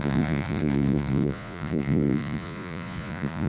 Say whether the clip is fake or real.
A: fake